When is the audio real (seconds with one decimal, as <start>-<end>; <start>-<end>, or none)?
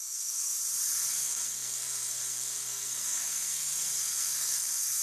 0.6-1.1